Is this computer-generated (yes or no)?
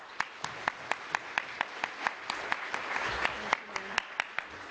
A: no